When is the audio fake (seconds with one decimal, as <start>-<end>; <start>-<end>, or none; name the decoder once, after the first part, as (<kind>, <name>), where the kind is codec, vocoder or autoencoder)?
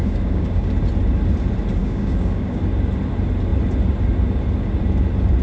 0.0-0.7 (codec, DAC); 1.8-2.6